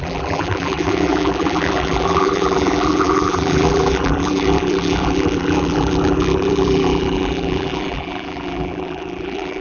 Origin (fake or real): fake